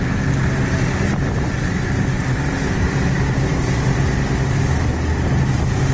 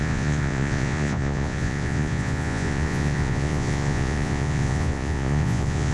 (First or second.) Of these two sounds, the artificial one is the second